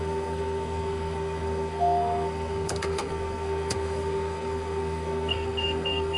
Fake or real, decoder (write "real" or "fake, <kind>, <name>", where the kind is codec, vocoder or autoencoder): fake, codec, SNAC